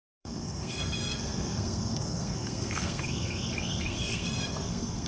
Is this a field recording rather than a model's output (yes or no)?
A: no